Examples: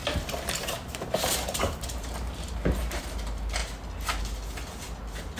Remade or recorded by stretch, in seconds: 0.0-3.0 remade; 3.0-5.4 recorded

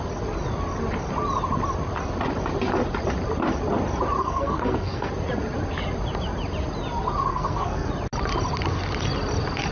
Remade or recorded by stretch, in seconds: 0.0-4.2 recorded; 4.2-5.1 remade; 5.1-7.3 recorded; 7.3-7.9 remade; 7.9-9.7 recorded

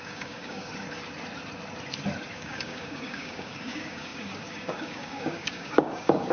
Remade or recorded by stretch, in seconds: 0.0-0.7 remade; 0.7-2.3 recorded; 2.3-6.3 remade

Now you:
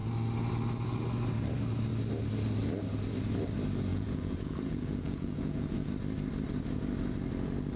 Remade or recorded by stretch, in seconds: 0.0-3.9 recorded; 3.9-5.9 remade; 5.9-7.8 recorded

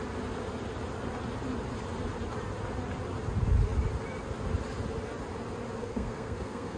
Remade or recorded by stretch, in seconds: 0.0-5.8 recorded; 5.8-6.8 remade

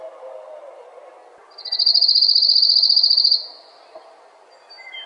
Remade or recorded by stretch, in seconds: 0.0-5.1 recorded

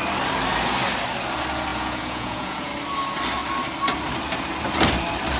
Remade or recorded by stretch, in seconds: 0.0-1.7 recorded; 1.7-2.7 remade; 2.7-5.4 recorded

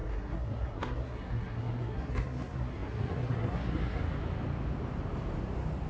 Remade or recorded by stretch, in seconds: 0.0-4.0 remade; 4.0-5.9 recorded